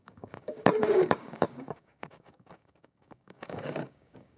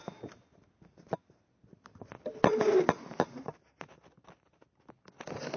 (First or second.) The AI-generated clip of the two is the first